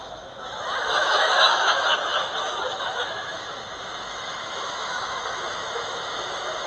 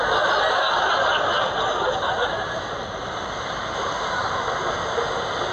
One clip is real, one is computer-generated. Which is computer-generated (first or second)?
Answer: first